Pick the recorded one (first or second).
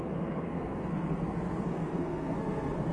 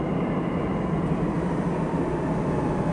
second